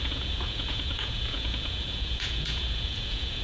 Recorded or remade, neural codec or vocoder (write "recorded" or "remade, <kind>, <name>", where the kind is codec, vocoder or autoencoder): remade, vocoder, Vocos